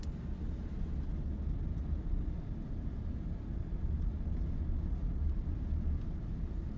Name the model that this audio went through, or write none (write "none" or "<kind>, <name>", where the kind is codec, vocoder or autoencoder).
none